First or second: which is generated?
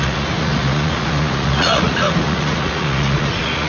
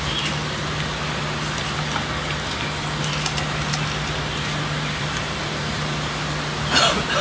first